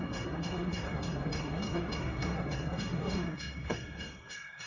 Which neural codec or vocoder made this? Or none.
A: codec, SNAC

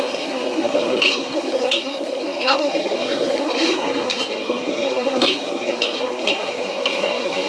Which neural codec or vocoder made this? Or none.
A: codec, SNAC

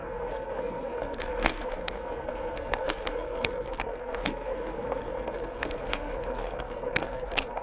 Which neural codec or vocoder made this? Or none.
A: codec, SNAC